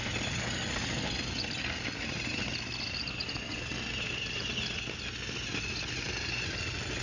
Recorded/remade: recorded